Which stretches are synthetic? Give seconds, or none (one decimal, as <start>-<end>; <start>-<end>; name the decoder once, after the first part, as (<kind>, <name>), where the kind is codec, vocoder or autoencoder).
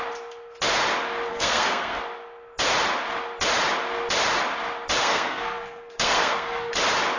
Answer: 1.3-2.0 (codec, SNAC); 5.0-6.7